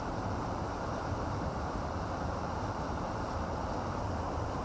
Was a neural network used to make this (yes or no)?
yes